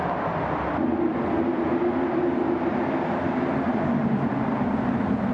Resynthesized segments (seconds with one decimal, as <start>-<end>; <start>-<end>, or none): none